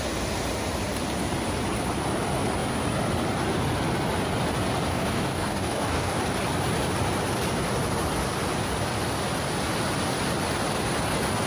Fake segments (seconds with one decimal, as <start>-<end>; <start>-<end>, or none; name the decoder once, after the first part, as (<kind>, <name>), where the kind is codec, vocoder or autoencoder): 4.9-6.2 (codec, DAC)